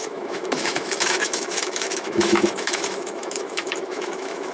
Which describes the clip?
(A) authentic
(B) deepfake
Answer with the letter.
B